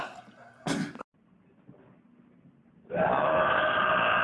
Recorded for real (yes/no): yes